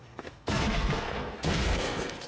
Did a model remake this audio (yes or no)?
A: yes